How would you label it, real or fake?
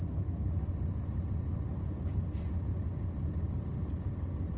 real